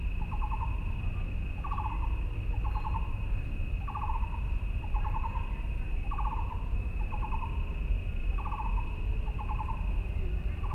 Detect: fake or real real